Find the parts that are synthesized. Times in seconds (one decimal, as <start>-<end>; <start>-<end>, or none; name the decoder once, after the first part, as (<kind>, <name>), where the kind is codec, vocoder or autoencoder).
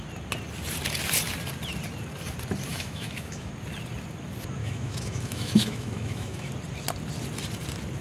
2.7-3.5 (autoencoder, DAC-VAE); 4.6-6.5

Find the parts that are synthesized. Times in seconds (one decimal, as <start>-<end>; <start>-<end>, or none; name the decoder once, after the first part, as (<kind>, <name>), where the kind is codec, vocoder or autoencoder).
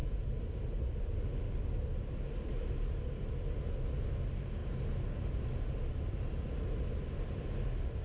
none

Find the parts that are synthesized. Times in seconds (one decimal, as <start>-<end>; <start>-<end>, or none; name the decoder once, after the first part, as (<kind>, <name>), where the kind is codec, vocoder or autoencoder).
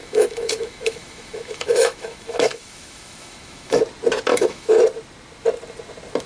0.0-3.8 (autoencoder, DAC-VAE); 4.3-4.8